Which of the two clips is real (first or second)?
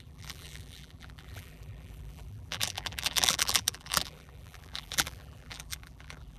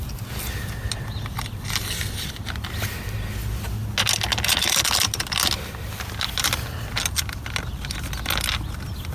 second